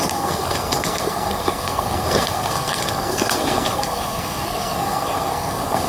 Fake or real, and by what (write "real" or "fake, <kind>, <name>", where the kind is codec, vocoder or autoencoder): fake, codec, SNAC